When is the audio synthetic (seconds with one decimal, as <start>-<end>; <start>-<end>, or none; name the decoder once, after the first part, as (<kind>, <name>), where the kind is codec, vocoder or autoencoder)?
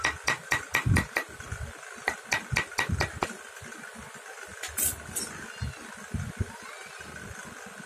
none